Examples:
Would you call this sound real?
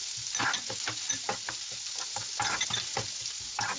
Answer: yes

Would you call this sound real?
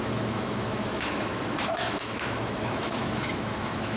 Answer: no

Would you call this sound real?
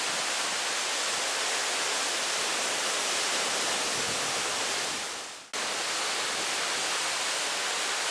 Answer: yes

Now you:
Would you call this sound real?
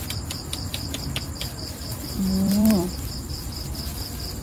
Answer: no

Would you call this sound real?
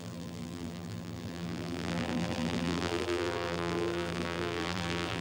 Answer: no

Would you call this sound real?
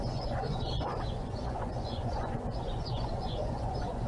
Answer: no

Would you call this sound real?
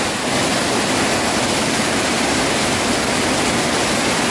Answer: yes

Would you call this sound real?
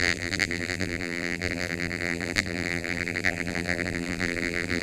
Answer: no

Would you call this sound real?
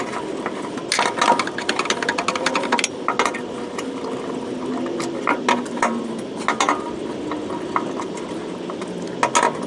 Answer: yes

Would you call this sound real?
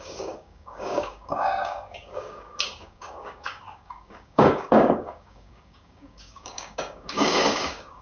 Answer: no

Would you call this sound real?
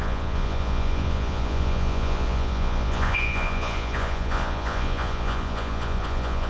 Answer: no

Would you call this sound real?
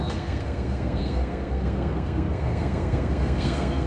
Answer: no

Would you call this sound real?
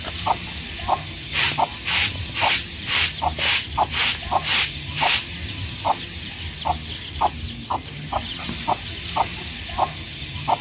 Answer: yes